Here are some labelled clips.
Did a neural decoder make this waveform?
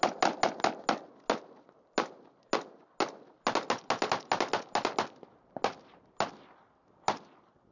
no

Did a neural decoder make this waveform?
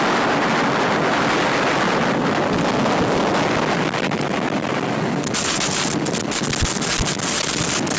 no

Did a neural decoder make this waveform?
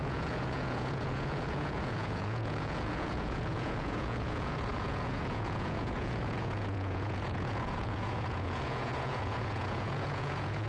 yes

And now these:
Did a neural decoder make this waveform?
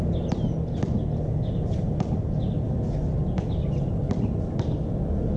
no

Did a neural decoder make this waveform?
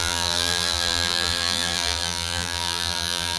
yes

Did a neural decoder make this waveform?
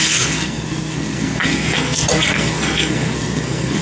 yes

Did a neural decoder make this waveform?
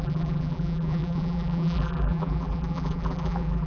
yes